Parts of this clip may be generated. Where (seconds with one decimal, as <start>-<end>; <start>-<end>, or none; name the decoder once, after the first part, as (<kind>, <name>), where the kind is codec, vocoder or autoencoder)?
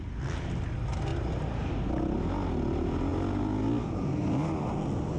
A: none